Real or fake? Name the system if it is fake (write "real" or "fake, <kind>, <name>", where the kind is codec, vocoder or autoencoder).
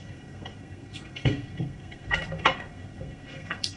fake, codec, SNAC